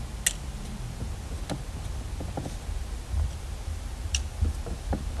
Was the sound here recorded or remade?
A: recorded